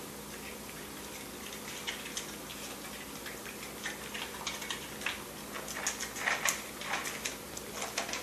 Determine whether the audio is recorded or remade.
recorded